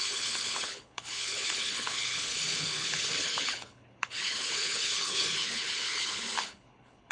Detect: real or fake fake